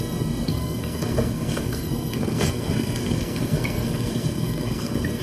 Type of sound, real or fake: fake